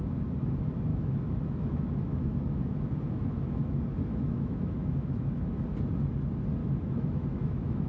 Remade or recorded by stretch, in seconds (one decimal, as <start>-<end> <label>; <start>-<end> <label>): 0.0-0.9 recorded; 0.9-5.6 remade; 5.6-6.6 recorded; 6.6-7.9 remade